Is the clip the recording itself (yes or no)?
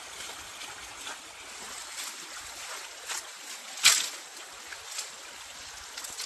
yes